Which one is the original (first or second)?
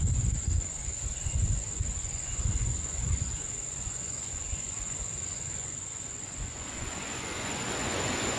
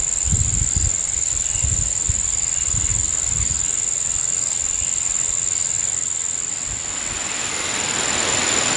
second